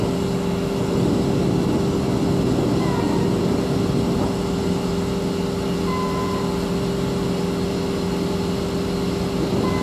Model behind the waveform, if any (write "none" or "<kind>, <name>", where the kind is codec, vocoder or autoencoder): none